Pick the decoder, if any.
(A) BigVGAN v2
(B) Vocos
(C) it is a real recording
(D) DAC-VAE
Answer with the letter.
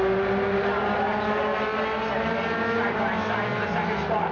C